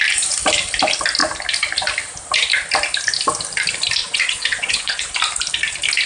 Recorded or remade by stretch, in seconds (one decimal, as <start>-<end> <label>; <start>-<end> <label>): 0.0-4.0 recorded; 4.0-5.1 remade; 5.1-6.1 recorded